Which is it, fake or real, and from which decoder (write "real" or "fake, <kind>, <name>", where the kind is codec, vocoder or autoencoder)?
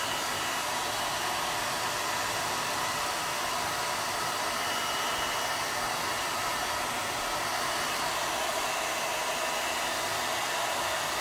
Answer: real